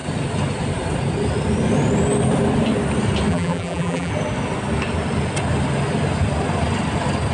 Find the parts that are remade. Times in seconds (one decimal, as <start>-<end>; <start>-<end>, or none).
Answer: 3.3-4.1